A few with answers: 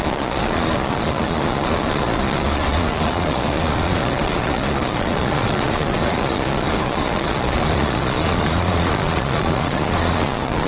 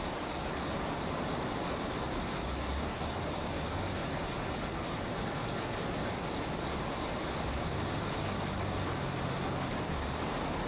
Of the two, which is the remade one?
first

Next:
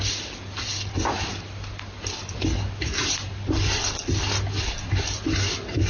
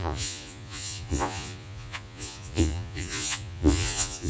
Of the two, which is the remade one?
second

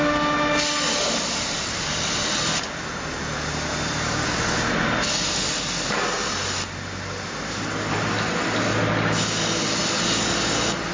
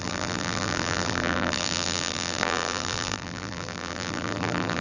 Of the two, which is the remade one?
second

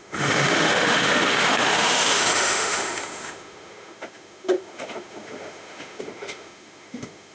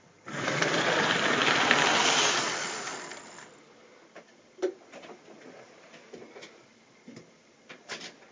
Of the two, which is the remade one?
first